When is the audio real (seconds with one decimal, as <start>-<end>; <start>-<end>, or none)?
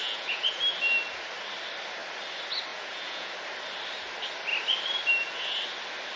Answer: 0.6-2.7; 3.3-6.2